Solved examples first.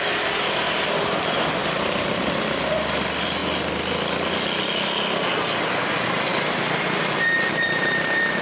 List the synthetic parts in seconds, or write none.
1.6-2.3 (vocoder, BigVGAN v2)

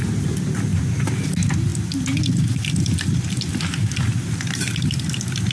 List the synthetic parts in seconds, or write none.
none

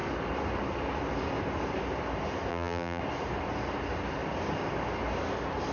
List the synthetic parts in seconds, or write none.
2.5-3.0 (vocoder, BigVGAN v2)

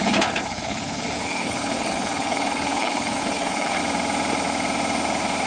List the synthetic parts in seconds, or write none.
0.0-3.8 (codec, HILCodec)

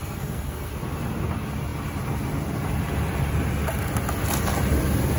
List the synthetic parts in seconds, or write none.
0.0-0.7 (codec, SNAC)

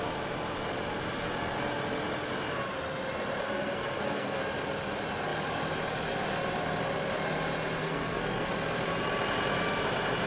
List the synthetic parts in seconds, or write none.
3.4-4.4 (codec, SNAC); 7.8-8.5